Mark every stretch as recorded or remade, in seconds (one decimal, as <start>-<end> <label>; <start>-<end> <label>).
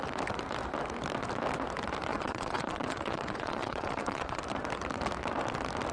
0.0-2.1 recorded; 2.1-4.4 remade; 4.4-5.9 recorded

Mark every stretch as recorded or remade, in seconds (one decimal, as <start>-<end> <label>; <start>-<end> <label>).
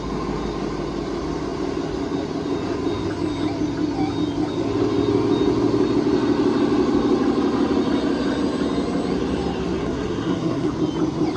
0.0-9.8 recorded; 9.8-10.7 remade; 10.7-11.4 recorded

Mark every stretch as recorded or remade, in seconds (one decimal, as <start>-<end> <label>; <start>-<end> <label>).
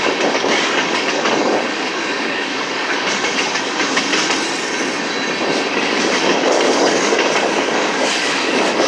0.0-4.1 remade; 4.1-5.7 recorded; 5.7-8.9 remade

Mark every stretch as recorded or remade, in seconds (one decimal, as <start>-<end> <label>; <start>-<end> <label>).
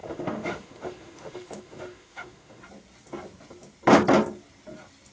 0.0-2.6 remade; 2.6-5.1 recorded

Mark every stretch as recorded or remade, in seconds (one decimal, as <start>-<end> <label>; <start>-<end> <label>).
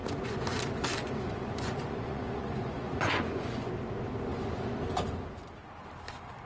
0.0-0.6 remade; 0.6-1.0 recorded; 1.0-3.7 remade; 3.7-6.5 recorded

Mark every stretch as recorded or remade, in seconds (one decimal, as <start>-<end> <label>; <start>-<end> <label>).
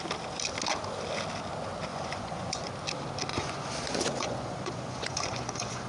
0.0-1.9 recorded; 1.9-2.7 remade; 2.7-3.3 recorded; 3.3-5.9 remade